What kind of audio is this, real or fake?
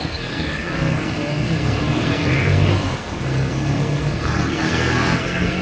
fake